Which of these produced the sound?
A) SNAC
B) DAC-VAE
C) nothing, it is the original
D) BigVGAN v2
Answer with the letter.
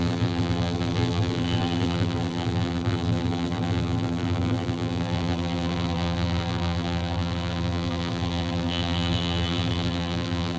D